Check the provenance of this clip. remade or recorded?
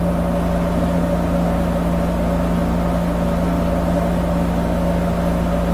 recorded